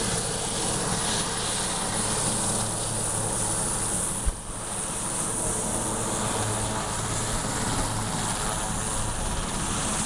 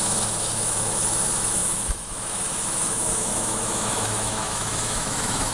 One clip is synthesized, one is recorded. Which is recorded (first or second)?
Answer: first